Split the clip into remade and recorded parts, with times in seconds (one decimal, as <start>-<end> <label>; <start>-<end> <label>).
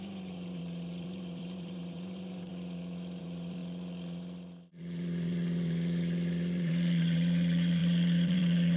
0.0-2.5 remade; 2.5-3.2 recorded; 3.2-3.6 remade; 3.6-4.8 recorded; 4.8-8.8 remade